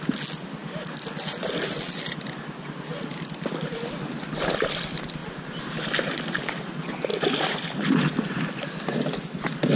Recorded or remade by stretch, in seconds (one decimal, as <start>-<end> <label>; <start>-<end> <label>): 0.0-0.6 recorded; 0.6-2.0 remade; 2.0-2.9 recorded; 2.9-4.2 remade; 4.2-7.1 recorded; 7.1-9.2 remade; 9.2-9.8 recorded